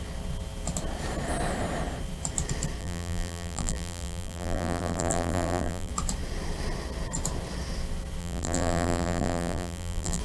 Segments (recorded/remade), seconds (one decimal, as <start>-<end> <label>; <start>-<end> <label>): 0.0-2.8 recorded; 2.8-5.9 remade; 5.9-8.2 recorded; 8.2-10.2 remade